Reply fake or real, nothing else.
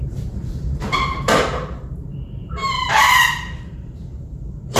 fake